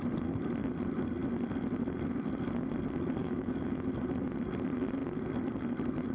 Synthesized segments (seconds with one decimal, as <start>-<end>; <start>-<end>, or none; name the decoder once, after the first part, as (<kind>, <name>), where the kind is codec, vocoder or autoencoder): 3.2-3.9 (autoencoder, DAC-VAE)